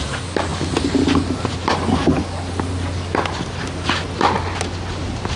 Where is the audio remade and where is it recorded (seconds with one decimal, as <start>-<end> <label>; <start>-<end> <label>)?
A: 0.0-5.4 recorded